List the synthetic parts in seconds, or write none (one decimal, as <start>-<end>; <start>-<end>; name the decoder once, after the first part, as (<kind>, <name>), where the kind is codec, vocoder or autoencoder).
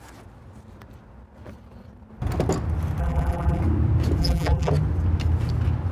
3.0-3.6 (vocoder, BigVGAN v2); 4.2-4.7